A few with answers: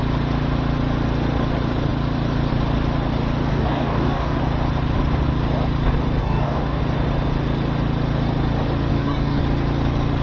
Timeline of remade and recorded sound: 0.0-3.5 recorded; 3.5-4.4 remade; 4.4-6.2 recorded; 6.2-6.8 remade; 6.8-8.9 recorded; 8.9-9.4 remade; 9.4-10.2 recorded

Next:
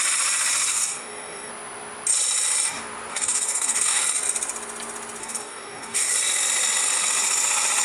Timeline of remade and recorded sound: 0.0-0.7 recorded; 0.7-1.5 remade; 1.5-3.1 recorded; 3.1-4.0 remade; 4.0-5.2 recorded; 5.2-6.1 remade; 6.1-7.8 recorded